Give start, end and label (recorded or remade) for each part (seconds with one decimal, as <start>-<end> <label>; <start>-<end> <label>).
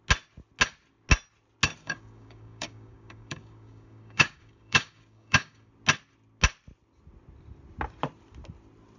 0.0-1.8 recorded; 1.8-5.7 remade; 5.7-9.0 recorded